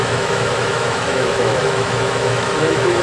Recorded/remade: remade